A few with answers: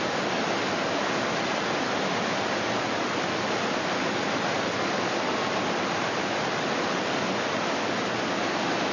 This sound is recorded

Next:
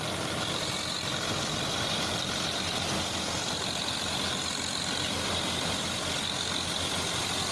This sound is recorded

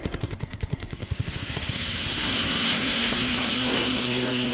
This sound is remade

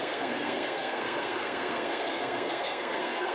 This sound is remade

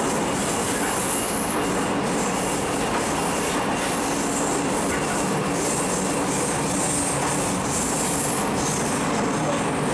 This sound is recorded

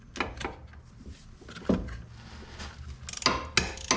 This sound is recorded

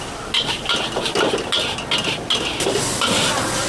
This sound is recorded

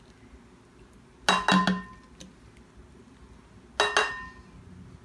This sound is recorded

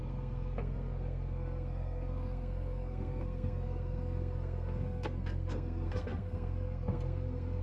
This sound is remade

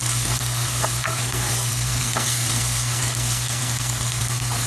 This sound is remade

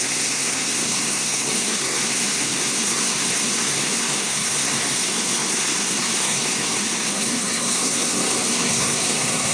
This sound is remade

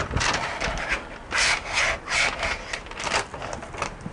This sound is recorded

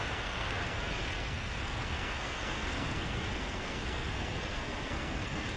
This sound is remade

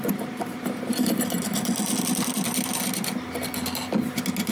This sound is recorded